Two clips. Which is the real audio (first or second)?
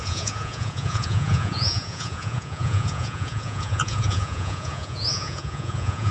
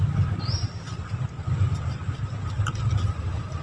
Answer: second